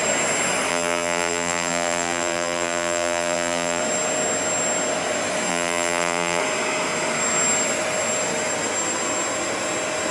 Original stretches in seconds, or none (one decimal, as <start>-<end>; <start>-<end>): 0.0-0.7; 3.8-5.5; 6.4-10.1